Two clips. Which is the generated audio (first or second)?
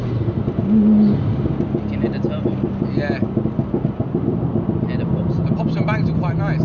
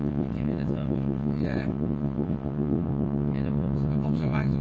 second